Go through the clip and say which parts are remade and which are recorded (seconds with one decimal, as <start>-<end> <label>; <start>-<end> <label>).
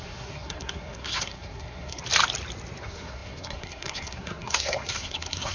0.0-2.0 remade; 2.0-2.8 recorded; 2.8-5.5 remade